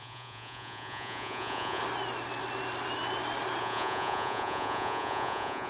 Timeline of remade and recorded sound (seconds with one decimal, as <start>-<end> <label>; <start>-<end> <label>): 0.0-1.8 remade; 1.8-3.6 recorded; 3.6-5.7 remade